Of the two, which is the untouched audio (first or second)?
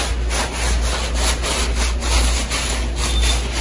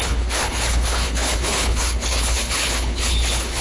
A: first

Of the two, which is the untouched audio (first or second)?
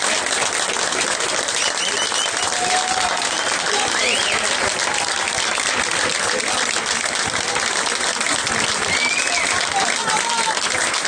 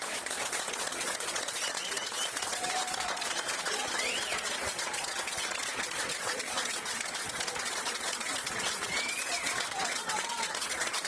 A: first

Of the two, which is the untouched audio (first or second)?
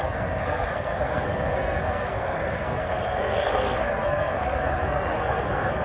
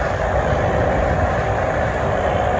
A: second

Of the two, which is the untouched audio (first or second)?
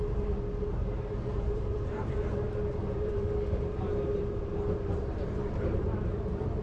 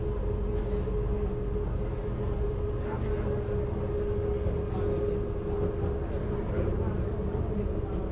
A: second